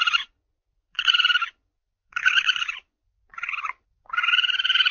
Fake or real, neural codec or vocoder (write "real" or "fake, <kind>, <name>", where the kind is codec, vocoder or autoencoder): fake, vocoder, Vocos